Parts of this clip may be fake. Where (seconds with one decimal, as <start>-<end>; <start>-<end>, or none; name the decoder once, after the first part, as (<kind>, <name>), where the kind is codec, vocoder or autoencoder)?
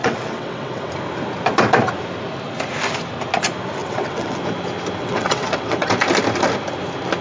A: 0.0-0.9 (vocoder, WaveNeXt); 3.8-4.4; 5.0-5.9